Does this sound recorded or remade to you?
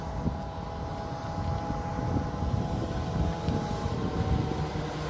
recorded